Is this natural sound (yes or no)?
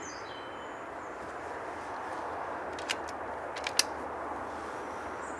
yes